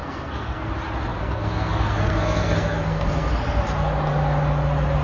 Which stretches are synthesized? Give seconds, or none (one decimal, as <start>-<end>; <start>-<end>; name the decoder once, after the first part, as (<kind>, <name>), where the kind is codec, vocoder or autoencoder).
0.0-0.7 (codec, SNAC); 1.2-3.3